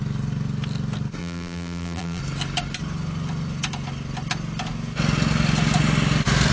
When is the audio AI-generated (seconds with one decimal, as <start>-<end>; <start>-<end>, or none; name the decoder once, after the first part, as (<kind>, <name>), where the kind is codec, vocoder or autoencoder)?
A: 1.2-2.2 (vocoder, BigVGAN v2)